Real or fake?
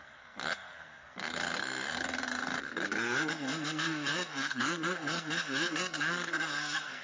fake